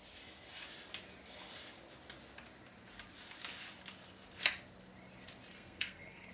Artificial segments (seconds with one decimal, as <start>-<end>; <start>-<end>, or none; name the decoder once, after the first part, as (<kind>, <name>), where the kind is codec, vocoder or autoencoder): 5.5-6.3 (codec, SNAC)